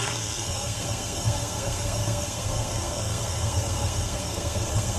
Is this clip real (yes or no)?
no